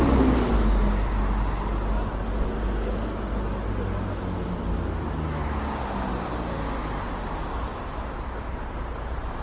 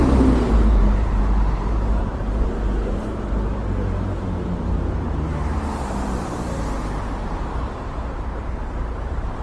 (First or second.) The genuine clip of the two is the first